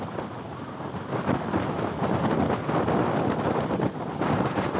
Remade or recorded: recorded